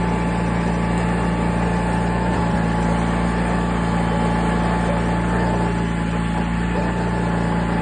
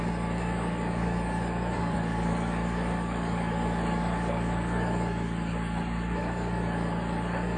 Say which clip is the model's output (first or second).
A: second